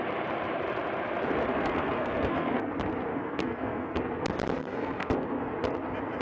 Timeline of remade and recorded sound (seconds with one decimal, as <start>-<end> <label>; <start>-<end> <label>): 0.0-1.5 recorded; 1.5-2.7 remade; 2.7-3.1 recorded; 3.1-4.0 remade; 4.0-4.6 recorded; 4.6-5.5 remade; 5.5-6.2 recorded